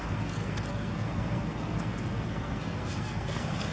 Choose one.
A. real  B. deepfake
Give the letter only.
B